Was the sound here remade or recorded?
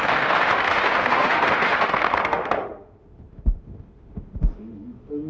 remade